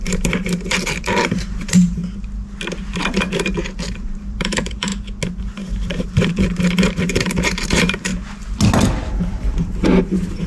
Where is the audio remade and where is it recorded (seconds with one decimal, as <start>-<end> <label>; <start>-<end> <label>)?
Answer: 0.0-2.0 remade; 2.0-3.1 recorded; 3.1-4.9 remade; 4.9-5.4 recorded; 5.4-8.1 remade; 8.1-9.1 recorded; 9.1-10.5 remade